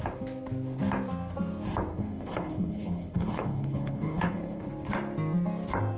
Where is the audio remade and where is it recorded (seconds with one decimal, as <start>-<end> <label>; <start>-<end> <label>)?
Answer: 0.0-1.9 recorded; 1.9-4.7 remade; 4.7-6.0 recorded